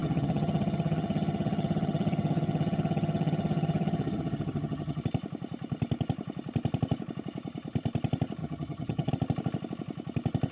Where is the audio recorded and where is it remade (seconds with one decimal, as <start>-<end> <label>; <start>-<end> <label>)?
0.0-5.0 remade; 5.0-8.4 recorded; 8.4-9.1 remade; 9.1-10.5 recorded